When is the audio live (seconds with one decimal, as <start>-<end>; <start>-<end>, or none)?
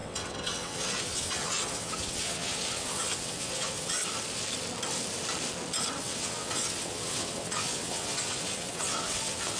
4.0-6.0